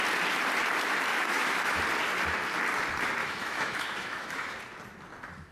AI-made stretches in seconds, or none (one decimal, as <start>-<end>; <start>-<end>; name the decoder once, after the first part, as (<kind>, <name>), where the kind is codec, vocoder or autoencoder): 1.1-1.8 (autoencoder, DAC-VAE); 3.2-4.6